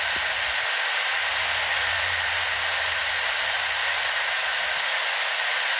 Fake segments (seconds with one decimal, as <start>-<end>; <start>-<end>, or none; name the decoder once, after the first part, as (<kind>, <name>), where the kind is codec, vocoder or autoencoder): none